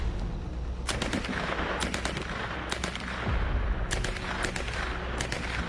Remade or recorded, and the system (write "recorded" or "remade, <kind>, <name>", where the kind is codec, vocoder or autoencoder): recorded